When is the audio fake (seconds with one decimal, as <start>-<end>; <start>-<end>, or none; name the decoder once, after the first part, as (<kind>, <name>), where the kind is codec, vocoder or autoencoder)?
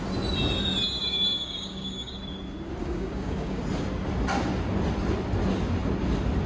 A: 1.0-2.2 (codec, DAC); 2.8-3.6